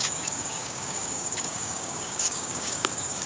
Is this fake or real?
fake